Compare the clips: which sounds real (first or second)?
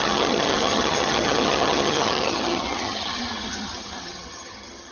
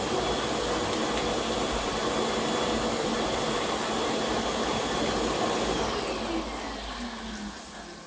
second